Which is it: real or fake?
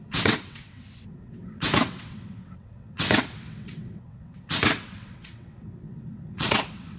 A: fake